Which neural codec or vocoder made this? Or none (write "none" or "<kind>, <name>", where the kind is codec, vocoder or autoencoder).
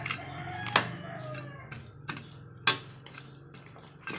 none